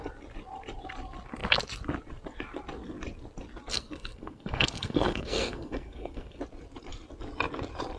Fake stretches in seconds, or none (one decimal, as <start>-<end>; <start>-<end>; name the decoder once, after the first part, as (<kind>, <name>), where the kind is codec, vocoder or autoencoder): 3.7-6.4 (codec, SNAC)